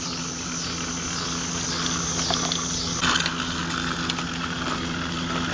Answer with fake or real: real